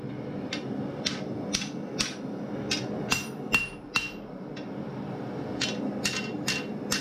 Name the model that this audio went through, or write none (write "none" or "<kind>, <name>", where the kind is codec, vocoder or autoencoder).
none